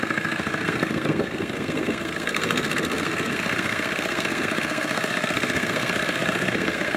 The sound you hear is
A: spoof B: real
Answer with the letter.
A